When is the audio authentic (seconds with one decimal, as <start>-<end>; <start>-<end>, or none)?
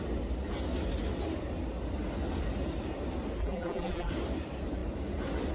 0.0-3.4; 4.1-5.5